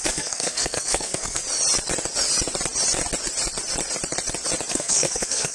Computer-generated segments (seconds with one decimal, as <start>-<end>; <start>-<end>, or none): 0.0-1.4; 4.7-5.5